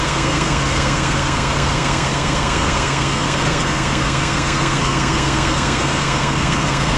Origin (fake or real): fake